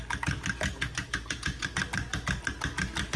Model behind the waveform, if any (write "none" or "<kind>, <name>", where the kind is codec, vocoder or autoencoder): none